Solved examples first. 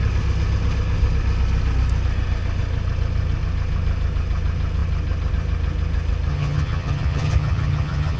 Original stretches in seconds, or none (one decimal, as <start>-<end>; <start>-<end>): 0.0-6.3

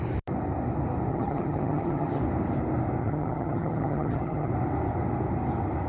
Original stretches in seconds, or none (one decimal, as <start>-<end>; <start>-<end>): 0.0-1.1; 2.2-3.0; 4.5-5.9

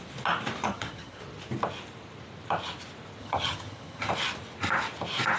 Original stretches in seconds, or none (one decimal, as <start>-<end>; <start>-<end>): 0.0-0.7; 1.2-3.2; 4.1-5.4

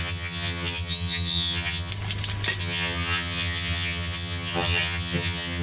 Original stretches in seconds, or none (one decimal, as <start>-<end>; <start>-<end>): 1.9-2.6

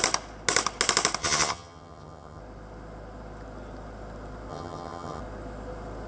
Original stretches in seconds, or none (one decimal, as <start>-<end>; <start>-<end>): 0.0-1.2; 2.4-4.5; 5.2-6.1

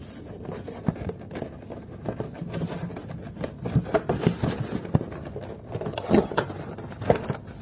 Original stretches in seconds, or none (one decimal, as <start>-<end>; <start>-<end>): 0.0-5.9; 6.4-7.6